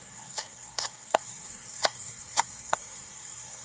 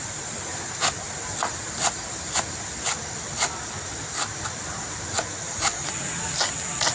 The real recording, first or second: second